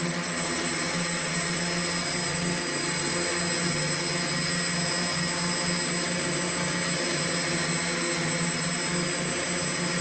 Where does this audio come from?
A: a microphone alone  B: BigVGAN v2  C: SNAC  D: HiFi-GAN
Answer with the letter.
A